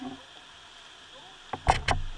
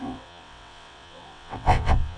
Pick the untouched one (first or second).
first